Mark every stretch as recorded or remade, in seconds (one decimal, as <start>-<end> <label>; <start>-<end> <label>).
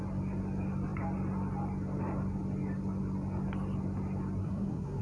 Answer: 0.0-4.4 recorded; 4.4-5.0 remade